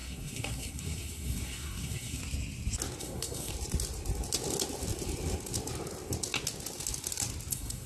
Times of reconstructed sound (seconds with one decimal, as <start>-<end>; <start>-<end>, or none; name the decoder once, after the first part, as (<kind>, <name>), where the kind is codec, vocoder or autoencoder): 0.0-2.2 (codec, SNAC); 3.0-3.5; 7.5-7.9